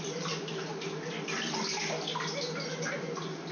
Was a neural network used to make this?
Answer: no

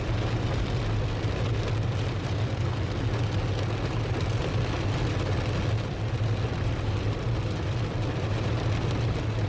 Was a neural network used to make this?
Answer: no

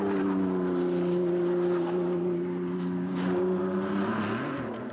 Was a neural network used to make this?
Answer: no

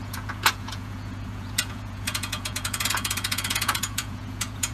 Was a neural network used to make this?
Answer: yes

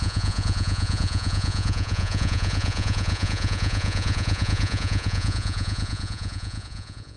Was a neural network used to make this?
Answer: yes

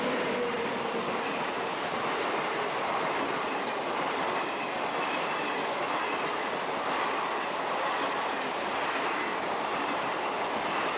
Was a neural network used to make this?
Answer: no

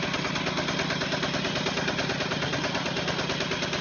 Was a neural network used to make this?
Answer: no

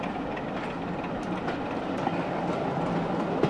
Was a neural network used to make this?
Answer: no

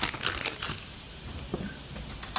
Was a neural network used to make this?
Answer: no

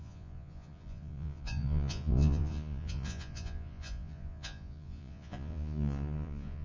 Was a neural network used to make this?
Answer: yes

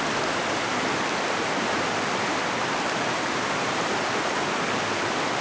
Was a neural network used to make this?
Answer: no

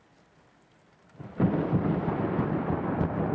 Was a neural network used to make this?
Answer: no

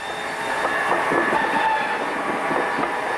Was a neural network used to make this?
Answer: no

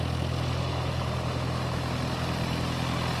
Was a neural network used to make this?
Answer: no